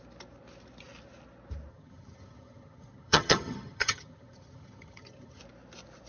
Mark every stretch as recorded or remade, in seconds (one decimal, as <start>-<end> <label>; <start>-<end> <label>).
0.0-1.7 recorded; 1.7-5.4 remade; 5.4-6.1 recorded